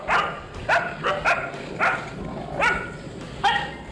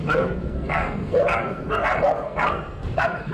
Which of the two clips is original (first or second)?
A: first